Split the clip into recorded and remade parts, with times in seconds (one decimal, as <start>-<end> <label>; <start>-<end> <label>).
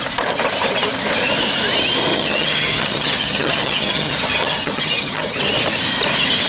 0.0-2.1 recorded; 2.1-5.4 remade; 5.4-6.5 recorded